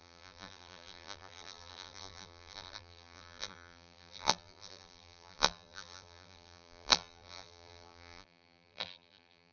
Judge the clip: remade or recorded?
remade